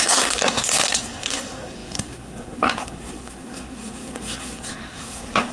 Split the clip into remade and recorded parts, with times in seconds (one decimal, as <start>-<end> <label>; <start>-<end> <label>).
0.0-5.5 remade